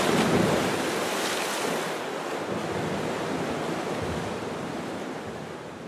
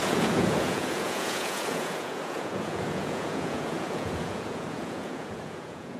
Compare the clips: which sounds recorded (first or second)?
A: first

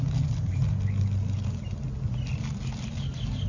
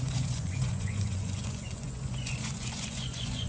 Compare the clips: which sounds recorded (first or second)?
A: first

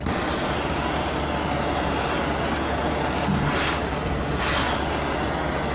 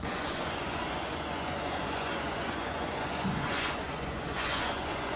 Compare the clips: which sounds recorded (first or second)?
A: first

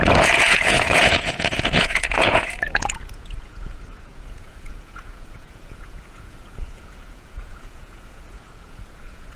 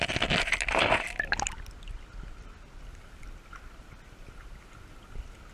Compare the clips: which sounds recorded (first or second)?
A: second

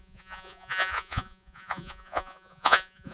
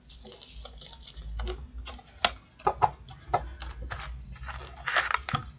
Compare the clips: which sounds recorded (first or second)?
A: second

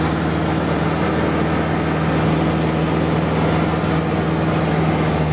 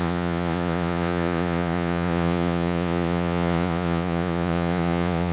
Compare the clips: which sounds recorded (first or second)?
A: first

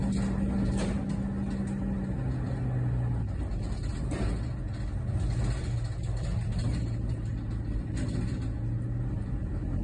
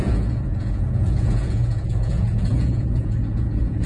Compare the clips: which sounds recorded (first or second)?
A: first